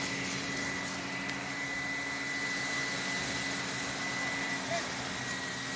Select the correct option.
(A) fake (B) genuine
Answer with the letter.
B